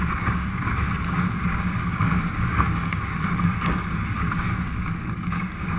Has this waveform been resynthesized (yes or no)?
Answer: yes